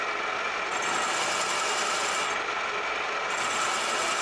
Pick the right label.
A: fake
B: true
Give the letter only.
B